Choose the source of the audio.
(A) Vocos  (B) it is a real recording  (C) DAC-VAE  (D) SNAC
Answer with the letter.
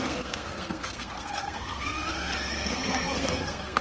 D